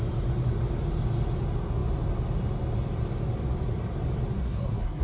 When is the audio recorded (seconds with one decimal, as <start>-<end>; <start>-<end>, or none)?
0.0-4.4